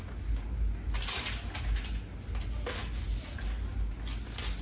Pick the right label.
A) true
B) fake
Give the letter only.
A